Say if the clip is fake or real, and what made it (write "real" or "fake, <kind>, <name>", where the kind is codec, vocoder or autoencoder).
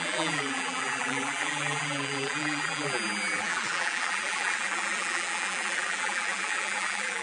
fake, vocoder, BigVGAN v2